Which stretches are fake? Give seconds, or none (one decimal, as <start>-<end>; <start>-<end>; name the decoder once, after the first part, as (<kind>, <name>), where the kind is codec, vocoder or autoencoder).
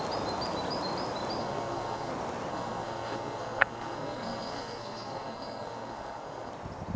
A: 1.4-2.1 (codec, SNAC); 2.5-6.5